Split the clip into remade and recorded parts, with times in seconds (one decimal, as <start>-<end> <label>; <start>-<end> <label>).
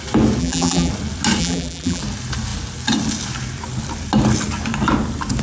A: 0.0-0.4 recorded; 0.4-0.9 remade; 0.9-1.4 recorded; 1.4-2.0 remade; 2.0-5.4 recorded